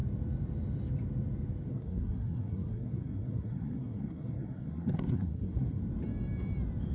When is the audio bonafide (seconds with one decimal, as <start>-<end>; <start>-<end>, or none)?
0.0-1.7; 5.8-6.9